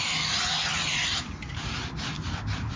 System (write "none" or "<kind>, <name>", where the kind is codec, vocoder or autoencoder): none